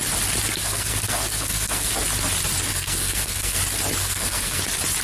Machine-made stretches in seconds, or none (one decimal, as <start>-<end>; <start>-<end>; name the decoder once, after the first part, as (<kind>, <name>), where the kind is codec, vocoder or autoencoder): 0.6-1.9 (codec, SNAC); 2.7-3.6; 4.0-4.6